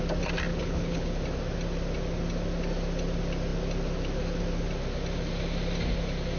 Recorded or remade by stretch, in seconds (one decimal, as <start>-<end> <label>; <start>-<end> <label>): 0.0-0.5 recorded; 0.5-1.2 remade; 1.2-6.4 recorded